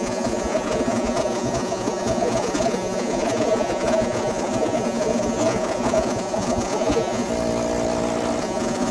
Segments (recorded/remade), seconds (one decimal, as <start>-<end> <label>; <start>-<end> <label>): 0.0-7.3 remade; 7.3-8.4 recorded; 8.4-8.9 remade